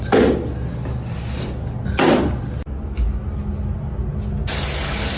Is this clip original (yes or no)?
yes